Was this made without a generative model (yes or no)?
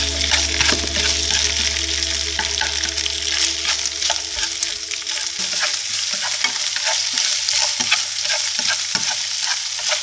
yes